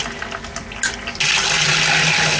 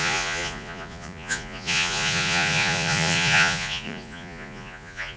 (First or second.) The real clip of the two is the first